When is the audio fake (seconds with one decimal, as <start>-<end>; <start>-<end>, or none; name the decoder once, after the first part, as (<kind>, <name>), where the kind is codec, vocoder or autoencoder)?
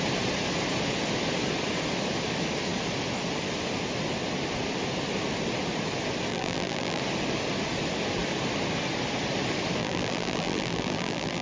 6.3-7.0 (vocoder, BigVGAN v2); 9.8-11.4